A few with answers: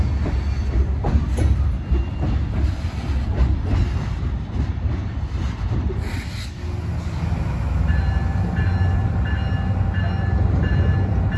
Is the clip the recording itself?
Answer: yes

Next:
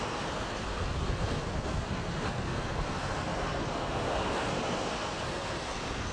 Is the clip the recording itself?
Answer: no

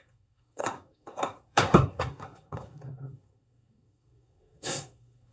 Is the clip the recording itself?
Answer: no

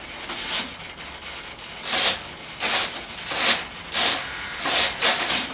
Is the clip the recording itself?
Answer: yes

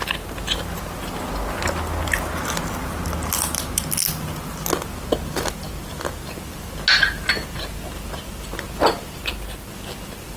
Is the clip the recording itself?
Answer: yes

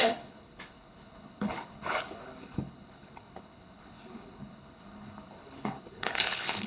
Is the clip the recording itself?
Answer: no